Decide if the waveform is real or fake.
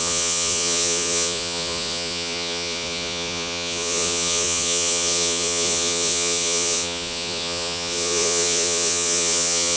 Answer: fake